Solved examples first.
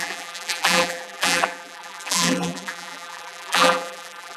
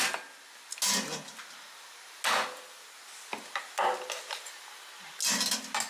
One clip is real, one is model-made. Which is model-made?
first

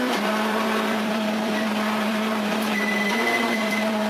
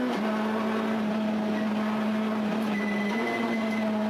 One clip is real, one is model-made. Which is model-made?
first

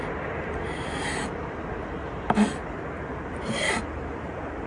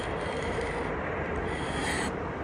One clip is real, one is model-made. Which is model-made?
second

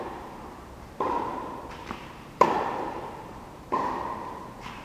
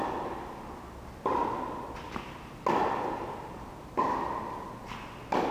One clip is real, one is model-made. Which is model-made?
first